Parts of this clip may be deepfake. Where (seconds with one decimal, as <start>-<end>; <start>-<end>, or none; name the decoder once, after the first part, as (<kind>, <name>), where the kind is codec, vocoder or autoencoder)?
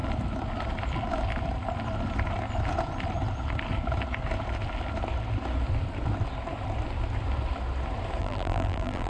8.2-9.1 (vocoder, BigVGAN v2)